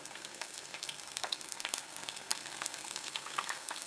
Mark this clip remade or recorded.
remade